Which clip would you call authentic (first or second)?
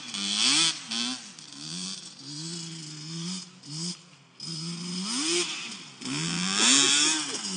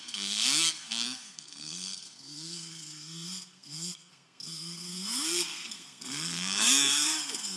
first